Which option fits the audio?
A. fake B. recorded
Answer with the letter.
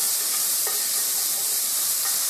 B